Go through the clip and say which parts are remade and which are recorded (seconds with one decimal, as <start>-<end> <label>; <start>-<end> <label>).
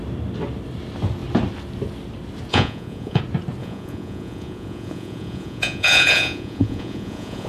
0.0-2.5 recorded; 2.5-3.2 remade; 3.2-3.6 recorded; 3.6-7.5 remade